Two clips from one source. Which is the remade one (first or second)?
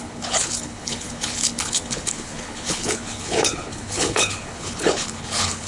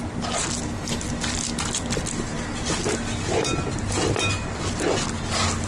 first